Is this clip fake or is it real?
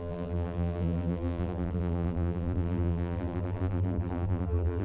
fake